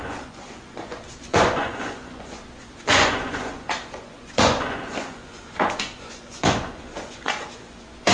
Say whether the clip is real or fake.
fake